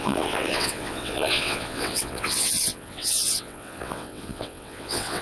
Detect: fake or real fake